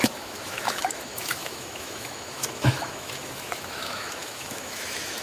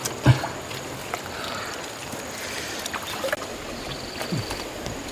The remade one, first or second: first